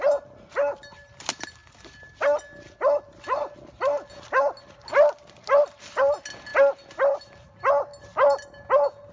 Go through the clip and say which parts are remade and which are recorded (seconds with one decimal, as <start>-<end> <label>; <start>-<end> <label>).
0.0-9.1 recorded